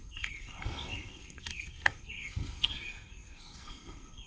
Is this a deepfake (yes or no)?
yes